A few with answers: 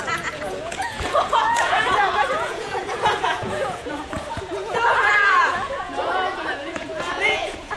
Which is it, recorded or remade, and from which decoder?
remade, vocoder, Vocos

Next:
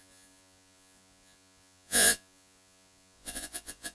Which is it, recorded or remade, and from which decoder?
remade, vocoder, Vocos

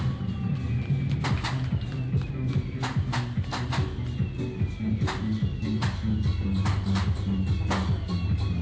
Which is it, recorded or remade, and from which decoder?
recorded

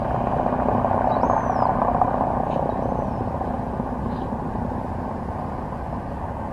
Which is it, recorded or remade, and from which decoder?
recorded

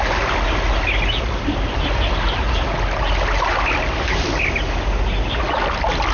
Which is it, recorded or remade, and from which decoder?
recorded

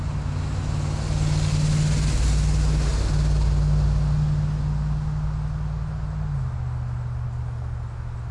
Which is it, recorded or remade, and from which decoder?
recorded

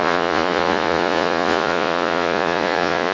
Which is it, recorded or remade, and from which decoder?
remade, vocoder, Vocos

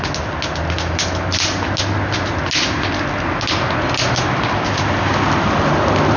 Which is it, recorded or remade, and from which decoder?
recorded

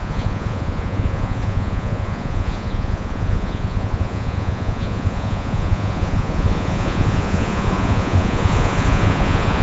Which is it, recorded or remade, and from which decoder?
remade, vocoder, Vocos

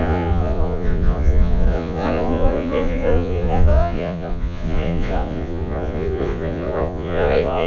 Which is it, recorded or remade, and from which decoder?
remade, vocoder, Vocos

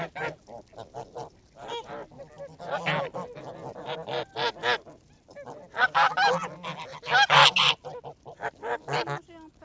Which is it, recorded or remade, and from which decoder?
recorded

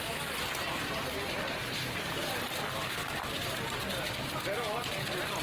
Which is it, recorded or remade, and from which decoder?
recorded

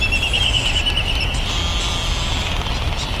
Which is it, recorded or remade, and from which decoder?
recorded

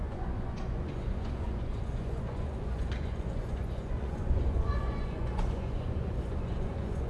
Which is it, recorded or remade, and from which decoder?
remade, vocoder, Vocos